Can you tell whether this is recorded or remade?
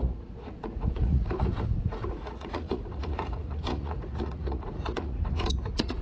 remade